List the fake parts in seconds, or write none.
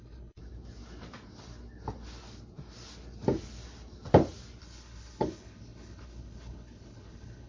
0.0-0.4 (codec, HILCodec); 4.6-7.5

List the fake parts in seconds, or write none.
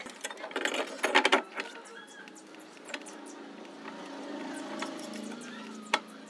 none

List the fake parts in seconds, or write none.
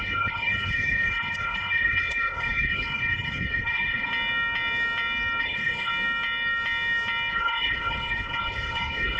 0.0-4.1 (codec, HILCodec); 5.4-5.9; 7.3-9.2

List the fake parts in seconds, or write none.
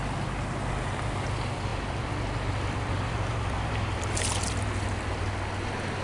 none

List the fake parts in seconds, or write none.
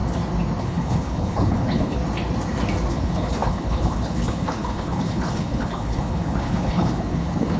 0.6-2.0 (codec, HILCodec); 2.9-7.6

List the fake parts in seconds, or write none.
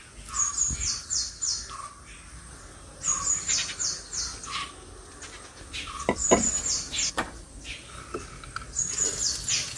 none